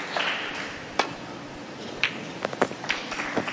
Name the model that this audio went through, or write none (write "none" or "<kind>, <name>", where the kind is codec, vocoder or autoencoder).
vocoder, BigVGAN v2